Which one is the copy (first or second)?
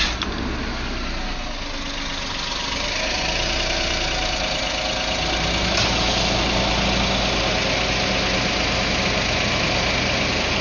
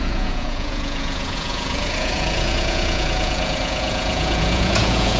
second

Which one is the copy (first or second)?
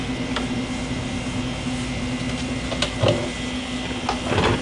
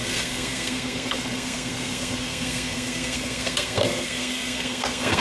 second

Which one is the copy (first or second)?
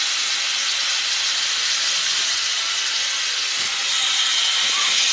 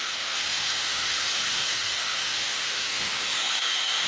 second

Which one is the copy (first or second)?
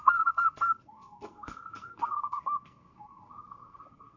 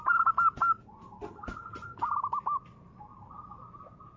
first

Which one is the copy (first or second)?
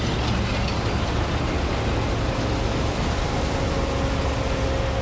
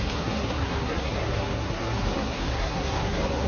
second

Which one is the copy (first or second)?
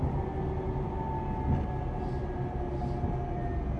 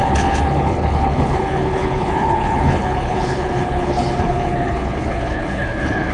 second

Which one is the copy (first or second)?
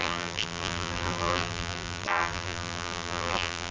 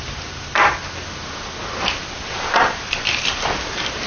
first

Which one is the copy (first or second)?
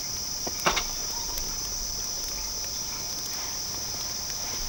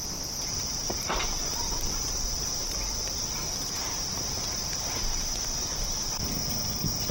second